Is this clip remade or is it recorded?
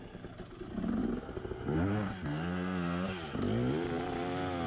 recorded